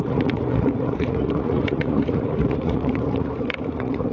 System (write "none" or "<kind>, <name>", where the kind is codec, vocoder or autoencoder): vocoder, Vocos